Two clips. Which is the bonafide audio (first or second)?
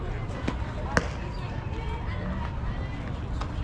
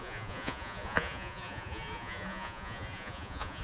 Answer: first